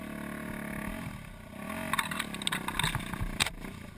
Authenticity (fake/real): real